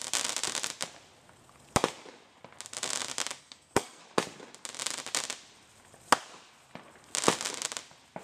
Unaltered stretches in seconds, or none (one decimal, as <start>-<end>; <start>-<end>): 0.0-3.4; 4.0-8.2